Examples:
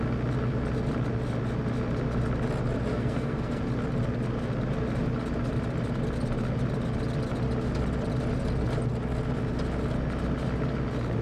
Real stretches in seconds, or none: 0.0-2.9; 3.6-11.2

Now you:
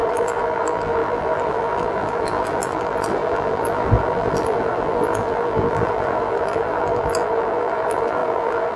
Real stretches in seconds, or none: none